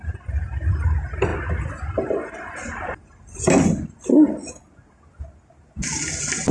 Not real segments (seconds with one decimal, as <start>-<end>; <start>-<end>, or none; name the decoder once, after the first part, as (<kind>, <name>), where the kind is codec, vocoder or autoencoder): none

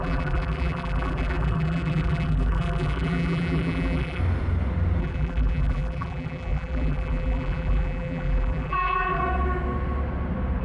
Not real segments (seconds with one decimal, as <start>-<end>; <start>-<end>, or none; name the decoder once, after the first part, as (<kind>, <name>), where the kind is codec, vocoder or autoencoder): 0.0-4.2 (vocoder, BigVGAN v2); 5.0-9.2

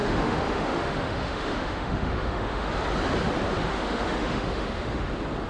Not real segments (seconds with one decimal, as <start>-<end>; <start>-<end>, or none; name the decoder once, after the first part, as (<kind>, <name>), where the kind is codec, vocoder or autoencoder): 0.0-2.7 (autoencoder, DAC-VAE); 3.7-5.1

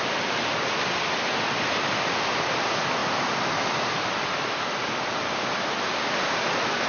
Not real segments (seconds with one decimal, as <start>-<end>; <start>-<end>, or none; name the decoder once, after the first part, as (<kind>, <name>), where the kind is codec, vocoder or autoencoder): none